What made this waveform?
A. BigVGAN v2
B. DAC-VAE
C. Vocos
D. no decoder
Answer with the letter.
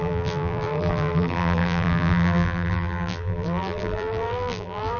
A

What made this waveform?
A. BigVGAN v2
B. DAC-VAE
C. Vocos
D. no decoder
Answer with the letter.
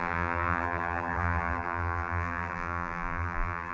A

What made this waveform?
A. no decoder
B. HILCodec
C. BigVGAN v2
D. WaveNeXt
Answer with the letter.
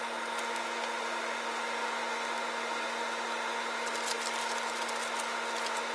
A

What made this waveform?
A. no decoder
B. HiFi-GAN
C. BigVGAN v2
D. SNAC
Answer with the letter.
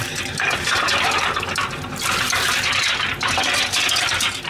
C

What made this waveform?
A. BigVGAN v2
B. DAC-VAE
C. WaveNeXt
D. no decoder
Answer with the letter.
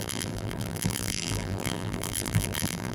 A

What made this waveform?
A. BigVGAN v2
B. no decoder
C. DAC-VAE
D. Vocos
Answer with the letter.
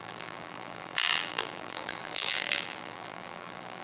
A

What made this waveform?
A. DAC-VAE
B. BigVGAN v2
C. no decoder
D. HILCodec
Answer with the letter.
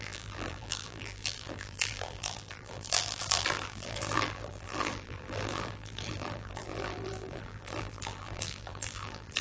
B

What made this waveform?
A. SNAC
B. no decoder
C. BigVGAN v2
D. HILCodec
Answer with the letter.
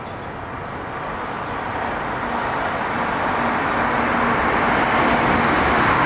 B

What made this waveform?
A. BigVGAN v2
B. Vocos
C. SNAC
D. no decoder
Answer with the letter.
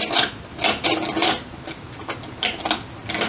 D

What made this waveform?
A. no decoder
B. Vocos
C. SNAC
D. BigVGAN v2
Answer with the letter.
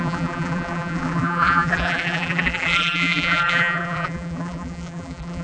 D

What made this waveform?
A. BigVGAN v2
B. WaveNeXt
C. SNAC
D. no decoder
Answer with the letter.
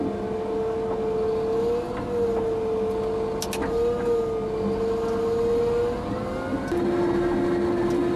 D